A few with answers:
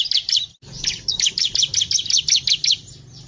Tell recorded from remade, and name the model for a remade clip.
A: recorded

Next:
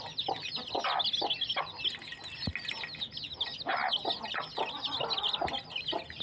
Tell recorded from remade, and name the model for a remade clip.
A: recorded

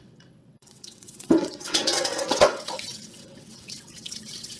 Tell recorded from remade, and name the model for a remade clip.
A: remade, vocoder, WaveNeXt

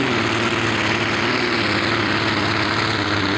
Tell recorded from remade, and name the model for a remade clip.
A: recorded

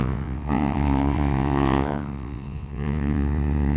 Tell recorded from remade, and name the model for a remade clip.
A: remade, vocoder, WaveNeXt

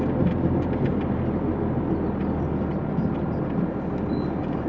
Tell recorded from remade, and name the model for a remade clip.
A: recorded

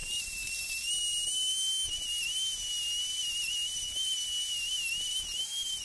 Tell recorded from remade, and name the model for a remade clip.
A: recorded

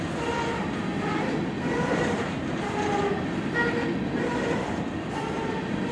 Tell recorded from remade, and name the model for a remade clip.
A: recorded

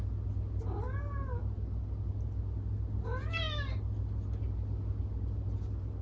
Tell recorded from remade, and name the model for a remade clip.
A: recorded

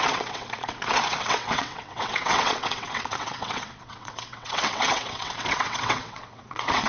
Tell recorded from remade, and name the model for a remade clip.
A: remade, vocoder, WaveNeXt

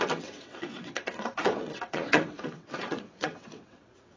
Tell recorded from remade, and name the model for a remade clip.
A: remade, vocoder, WaveNeXt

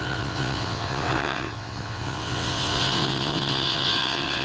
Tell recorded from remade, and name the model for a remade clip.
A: remade, vocoder, WaveNeXt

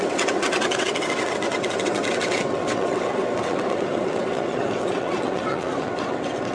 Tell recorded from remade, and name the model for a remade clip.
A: remade, vocoder, WaveNeXt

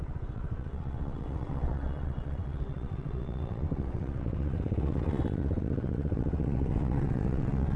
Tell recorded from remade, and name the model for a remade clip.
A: remade, vocoder, WaveNeXt